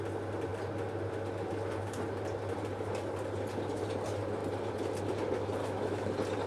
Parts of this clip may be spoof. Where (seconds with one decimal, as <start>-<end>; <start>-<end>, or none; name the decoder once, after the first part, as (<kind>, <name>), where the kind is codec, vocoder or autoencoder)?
5.6-6.1 (autoencoder, DAC-VAE)